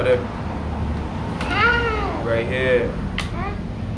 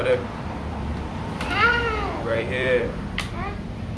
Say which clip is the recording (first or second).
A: first